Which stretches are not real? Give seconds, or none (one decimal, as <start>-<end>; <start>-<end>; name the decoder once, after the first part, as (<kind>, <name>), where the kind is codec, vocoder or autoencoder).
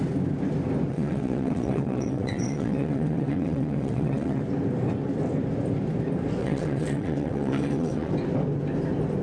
0.9-4.4 (vocoder, WaveNeXt); 6.4-8.1